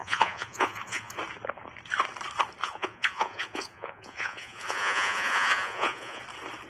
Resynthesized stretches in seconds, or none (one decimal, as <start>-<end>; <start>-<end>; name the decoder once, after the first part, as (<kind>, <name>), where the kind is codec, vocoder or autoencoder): 0.0-1.1 (vocoder, Vocos); 2.6-6.2